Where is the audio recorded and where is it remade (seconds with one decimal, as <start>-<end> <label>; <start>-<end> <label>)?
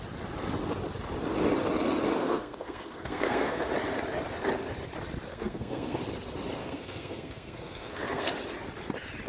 0.0-2.1 recorded; 2.1-3.7 remade; 3.7-5.3 recorded; 5.3-6.0 remade; 6.0-6.6 recorded; 6.6-8.3 remade; 8.3-9.3 recorded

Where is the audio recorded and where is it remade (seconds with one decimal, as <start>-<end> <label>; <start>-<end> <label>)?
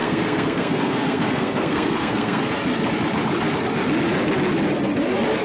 0.0-2.4 remade; 2.4-5.4 recorded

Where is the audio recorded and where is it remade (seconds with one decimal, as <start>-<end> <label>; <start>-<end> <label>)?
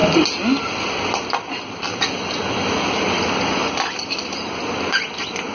0.0-5.5 recorded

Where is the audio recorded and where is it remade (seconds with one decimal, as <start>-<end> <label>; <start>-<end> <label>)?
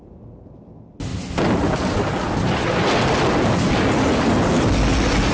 0.0-5.3 recorded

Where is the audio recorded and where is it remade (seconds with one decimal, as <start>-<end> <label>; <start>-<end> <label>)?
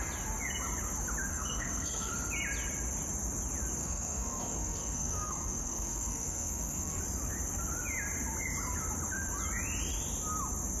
0.0-1.3 recorded; 1.3-2.1 remade; 2.1-3.8 recorded; 3.8-7.0 remade; 7.0-10.8 recorded